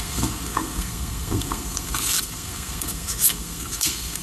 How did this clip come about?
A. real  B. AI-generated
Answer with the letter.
B